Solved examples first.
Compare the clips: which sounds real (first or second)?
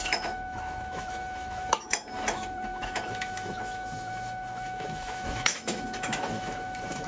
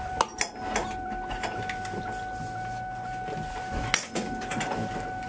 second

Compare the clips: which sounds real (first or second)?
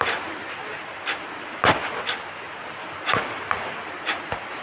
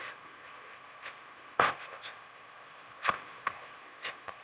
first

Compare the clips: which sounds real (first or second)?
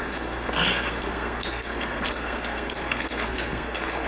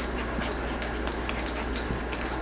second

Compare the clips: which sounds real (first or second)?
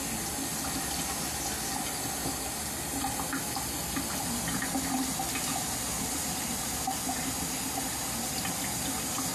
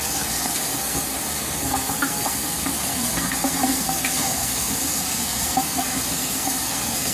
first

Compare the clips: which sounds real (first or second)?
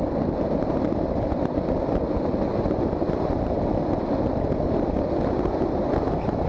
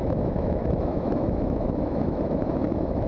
first